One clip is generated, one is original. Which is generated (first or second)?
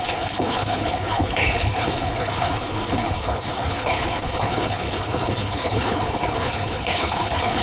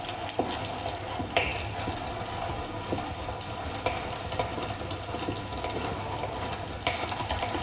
first